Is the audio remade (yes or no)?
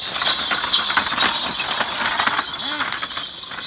no